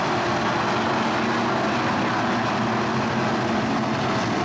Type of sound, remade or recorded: recorded